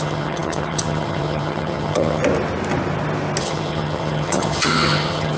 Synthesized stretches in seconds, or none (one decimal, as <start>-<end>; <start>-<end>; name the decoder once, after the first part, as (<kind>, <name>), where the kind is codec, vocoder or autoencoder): 0.0-2.2 (vocoder, HiFi-GAN); 3.4-5.4